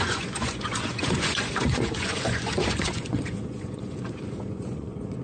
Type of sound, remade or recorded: remade